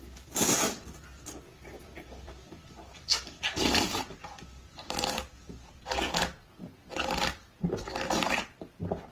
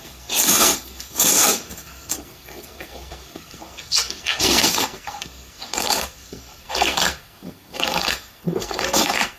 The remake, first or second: second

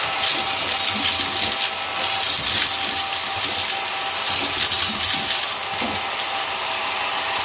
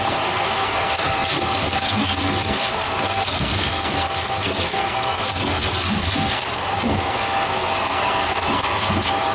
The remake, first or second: second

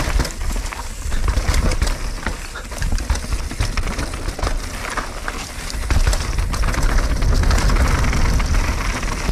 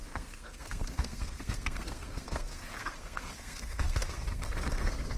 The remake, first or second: second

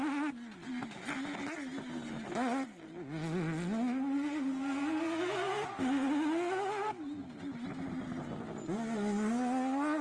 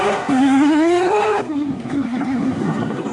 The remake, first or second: second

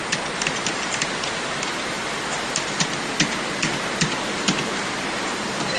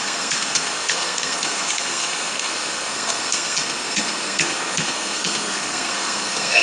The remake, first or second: second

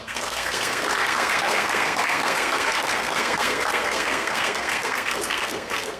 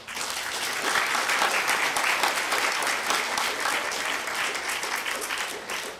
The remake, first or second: first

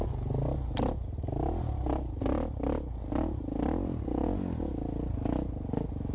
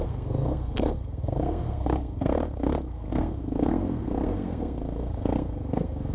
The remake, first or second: second